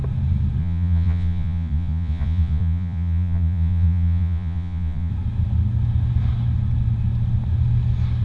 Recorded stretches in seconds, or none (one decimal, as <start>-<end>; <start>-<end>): 0.0-0.6; 5.1-8.2